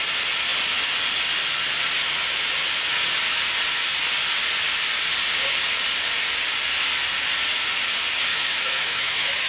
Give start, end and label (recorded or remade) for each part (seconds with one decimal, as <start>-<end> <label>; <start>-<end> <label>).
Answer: 0.0-8.3 recorded; 8.3-9.5 remade